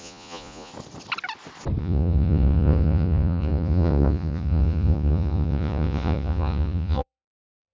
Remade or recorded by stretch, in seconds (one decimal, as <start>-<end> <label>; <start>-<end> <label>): 0.0-0.7 remade; 0.7-1.8 recorded; 1.8-7.7 remade